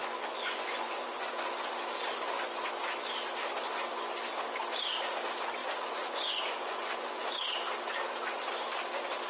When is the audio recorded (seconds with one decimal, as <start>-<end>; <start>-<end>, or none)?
1.5-5.6; 7.3-9.3